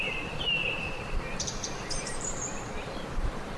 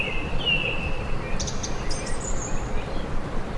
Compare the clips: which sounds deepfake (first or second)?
first